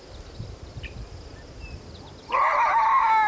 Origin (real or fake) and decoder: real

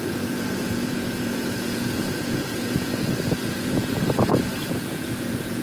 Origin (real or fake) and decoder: fake, vocoder, Vocos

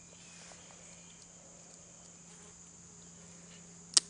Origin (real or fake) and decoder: real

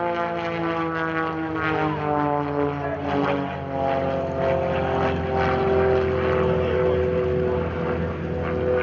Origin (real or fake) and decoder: real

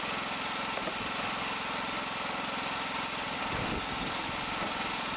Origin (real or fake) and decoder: real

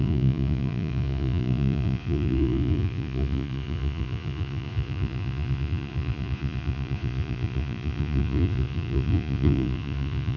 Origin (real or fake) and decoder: fake, vocoder, Vocos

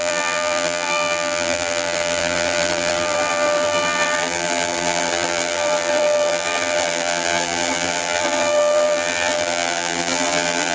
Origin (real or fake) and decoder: fake, vocoder, BigVGAN v2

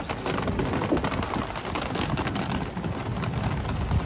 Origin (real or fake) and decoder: real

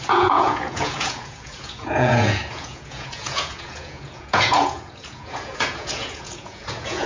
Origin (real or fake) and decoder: fake, vocoder, Vocos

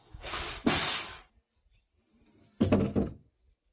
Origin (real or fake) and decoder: real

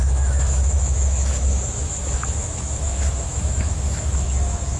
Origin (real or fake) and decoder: fake, autoencoder, DAC-VAE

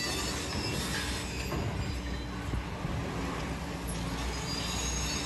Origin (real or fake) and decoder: real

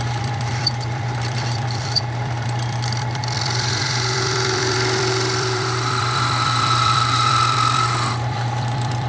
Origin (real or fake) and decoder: fake, vocoder, BigVGAN v2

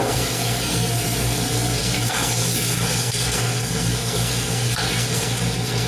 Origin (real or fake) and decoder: fake, codec, SNAC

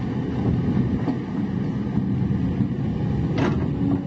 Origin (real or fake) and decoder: real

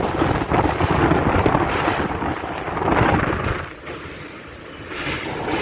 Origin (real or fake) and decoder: real